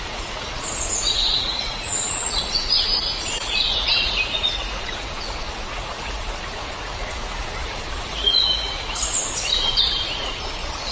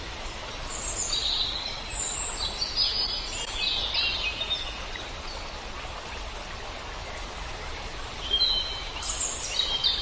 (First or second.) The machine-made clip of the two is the first